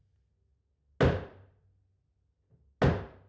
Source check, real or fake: real